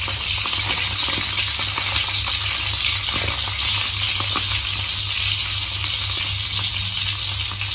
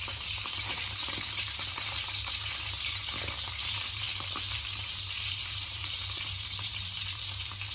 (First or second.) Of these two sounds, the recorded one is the first